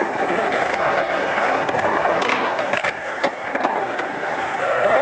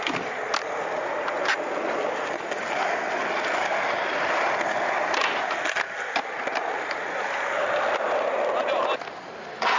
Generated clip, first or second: first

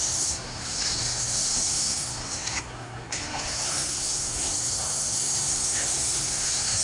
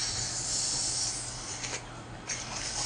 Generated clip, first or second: first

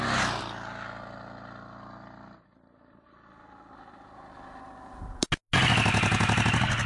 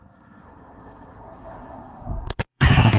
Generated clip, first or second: second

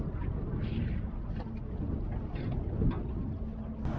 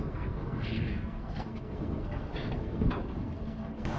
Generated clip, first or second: second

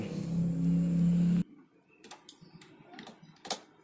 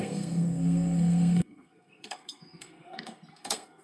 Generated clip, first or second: second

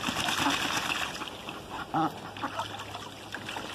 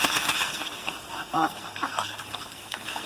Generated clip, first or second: second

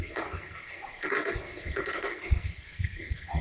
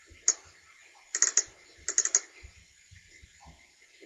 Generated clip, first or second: first